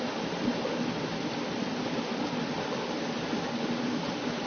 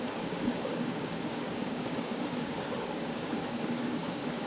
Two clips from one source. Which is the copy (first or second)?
second